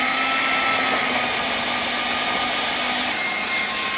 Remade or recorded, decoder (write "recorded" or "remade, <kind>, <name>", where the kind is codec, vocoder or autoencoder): recorded